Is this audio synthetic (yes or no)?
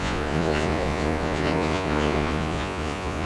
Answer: yes